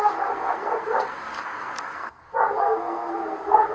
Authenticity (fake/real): fake